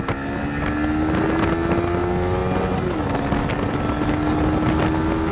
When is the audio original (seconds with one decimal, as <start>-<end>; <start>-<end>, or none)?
0.0-5.3

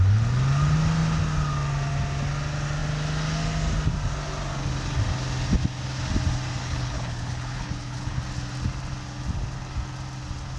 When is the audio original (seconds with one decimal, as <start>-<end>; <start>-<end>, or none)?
0.0-6.6; 8.2-10.6